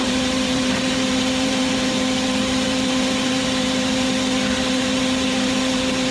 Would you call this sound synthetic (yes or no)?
yes